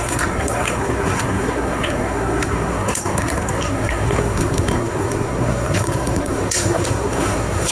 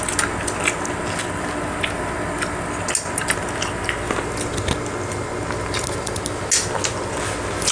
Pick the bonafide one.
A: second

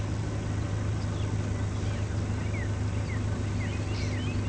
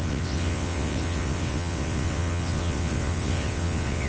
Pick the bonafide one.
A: first